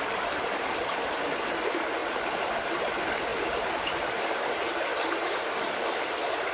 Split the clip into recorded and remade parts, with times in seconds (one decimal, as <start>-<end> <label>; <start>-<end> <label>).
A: 0.0-4.9 remade; 4.9-5.7 recorded; 5.7-6.5 remade